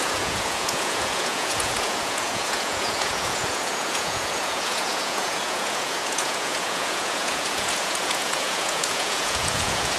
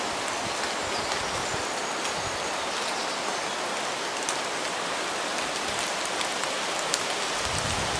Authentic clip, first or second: second